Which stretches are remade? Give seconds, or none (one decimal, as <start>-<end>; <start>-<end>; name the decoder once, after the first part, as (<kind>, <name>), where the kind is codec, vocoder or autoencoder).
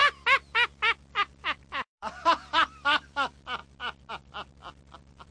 1.2-5.3 (vocoder, BigVGAN v2)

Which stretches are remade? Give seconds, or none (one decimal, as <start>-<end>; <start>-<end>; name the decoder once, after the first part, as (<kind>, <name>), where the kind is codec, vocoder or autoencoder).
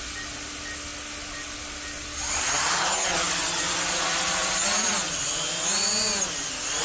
4.4-5.3 (vocoder, BigVGAN v2)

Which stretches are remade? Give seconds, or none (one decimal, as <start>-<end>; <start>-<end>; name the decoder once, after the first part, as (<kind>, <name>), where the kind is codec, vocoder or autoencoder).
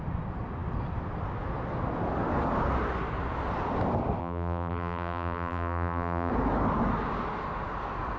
4.2-6.3 (vocoder, BigVGAN v2)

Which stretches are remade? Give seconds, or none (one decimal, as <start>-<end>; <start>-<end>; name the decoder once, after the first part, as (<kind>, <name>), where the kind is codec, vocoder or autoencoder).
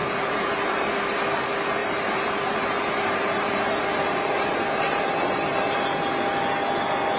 0.0-0.9 (vocoder, BigVGAN v2); 1.8-6.1